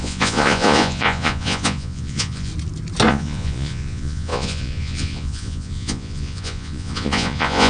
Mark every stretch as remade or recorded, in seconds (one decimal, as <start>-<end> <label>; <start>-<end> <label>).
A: 0.0-2.5 remade; 2.5-3.1 recorded; 3.1-7.7 remade